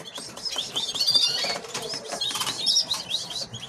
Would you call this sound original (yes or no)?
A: no